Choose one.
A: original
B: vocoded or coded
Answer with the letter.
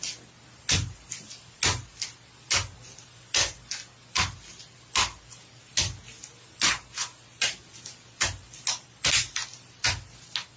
A